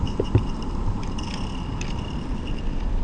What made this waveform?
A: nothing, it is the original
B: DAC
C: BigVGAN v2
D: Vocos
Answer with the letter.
A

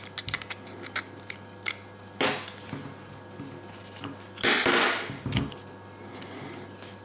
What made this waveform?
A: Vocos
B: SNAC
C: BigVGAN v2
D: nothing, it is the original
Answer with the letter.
D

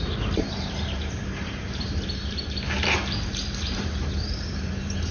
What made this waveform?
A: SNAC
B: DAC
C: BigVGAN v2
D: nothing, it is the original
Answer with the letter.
C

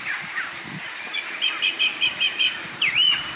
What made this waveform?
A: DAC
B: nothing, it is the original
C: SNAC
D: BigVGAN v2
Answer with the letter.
D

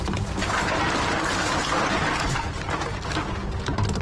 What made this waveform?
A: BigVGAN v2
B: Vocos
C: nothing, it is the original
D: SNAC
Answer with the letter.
C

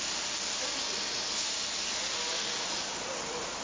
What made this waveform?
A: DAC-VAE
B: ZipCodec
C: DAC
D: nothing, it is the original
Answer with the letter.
D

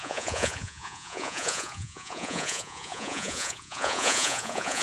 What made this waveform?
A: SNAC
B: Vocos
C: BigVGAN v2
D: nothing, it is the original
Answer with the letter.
B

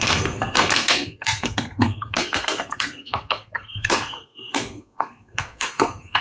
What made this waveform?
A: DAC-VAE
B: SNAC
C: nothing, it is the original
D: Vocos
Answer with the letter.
B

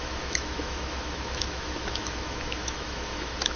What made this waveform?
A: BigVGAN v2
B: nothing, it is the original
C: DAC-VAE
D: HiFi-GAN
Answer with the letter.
C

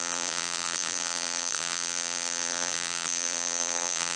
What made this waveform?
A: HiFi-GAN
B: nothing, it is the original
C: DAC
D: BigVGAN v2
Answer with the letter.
D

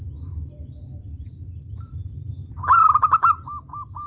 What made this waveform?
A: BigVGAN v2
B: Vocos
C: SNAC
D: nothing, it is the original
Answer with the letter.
A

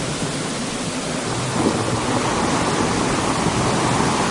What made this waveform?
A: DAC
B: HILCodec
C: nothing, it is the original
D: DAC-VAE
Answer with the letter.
C